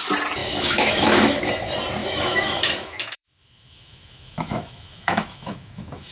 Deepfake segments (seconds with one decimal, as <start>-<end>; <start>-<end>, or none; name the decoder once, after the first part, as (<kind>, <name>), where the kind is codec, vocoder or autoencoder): 0.4-1.4 (autoencoder, DAC-VAE); 2.0-6.1